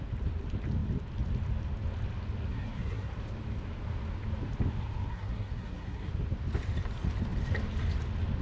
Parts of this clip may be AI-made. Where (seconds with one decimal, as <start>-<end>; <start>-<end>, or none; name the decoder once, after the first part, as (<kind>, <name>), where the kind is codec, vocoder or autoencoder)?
2.5-3.1 (codec, SNAC); 5.1-6.1